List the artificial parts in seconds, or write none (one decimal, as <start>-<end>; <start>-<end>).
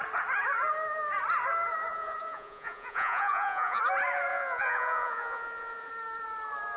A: 1.9-3.8; 4.3-5.9